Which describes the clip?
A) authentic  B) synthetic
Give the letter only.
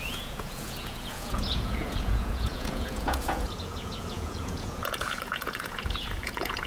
B